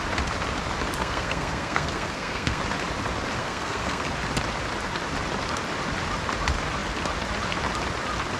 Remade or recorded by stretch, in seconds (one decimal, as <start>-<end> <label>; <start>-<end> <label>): 0.0-1.0 recorded; 1.0-2.6 remade; 2.6-3.4 recorded; 3.4-4.1 remade; 4.1-8.4 recorded